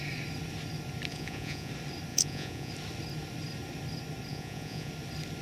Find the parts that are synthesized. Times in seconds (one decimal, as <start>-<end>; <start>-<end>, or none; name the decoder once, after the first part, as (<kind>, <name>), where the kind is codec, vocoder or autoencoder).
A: 1.1-1.7 (vocoder, Vocos); 2.1-2.7; 4.3-4.9